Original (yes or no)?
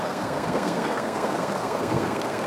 no